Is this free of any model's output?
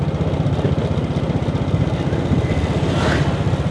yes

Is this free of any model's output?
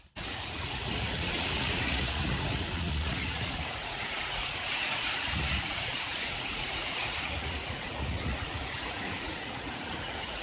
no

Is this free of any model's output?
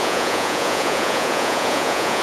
no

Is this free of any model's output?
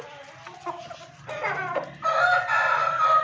yes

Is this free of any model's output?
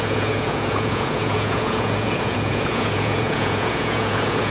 no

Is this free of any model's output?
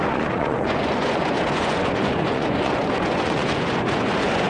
no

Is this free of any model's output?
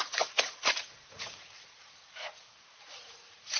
no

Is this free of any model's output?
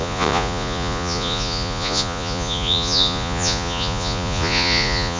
no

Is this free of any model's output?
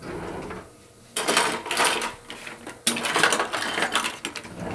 yes